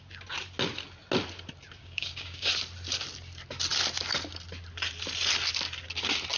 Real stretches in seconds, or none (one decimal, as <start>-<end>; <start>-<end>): 0.0-1.8; 2.5-6.4